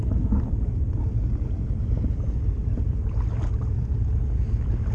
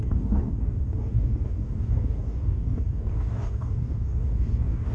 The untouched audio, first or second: first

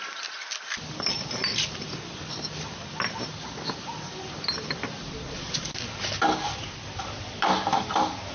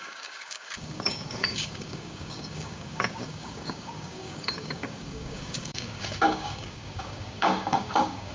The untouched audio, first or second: first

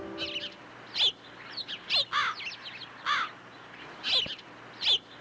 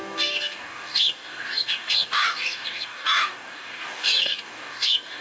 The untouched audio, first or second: first